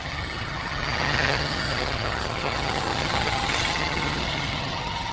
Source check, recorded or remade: remade